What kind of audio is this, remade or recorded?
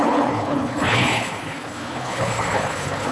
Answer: remade